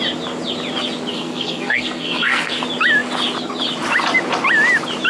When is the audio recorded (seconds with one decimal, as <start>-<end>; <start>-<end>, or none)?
0.0-1.1; 2.6-5.1